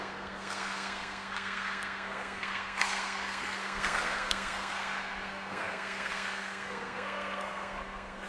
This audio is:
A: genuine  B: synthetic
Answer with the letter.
B